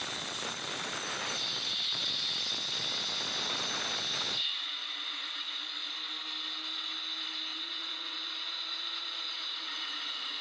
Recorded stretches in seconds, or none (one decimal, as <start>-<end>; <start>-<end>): 0.0-4.8; 5.9-7.5